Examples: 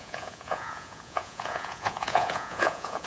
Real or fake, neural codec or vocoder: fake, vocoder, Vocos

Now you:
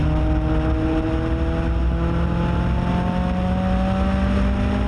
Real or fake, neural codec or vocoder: real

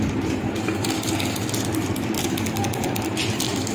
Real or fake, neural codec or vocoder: real